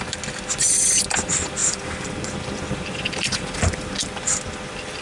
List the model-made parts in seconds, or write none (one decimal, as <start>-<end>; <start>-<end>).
none